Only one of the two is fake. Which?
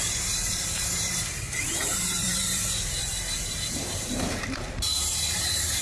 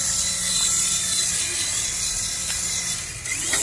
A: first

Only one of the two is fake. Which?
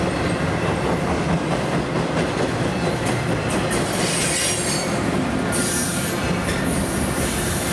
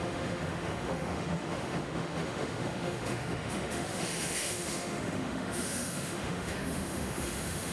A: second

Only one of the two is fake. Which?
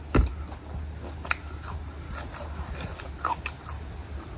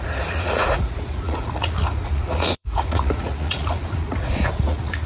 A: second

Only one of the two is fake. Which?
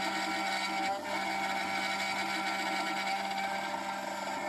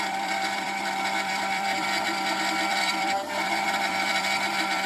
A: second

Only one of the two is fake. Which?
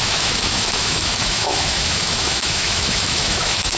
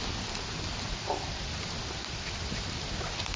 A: first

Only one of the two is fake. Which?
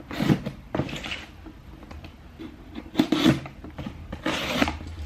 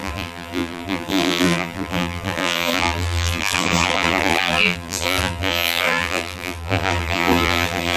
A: second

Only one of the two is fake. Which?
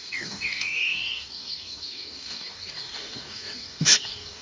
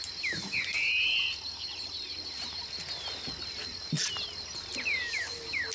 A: first